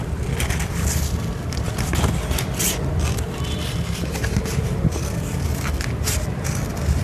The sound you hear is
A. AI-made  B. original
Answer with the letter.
A